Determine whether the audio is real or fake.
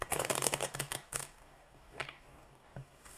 fake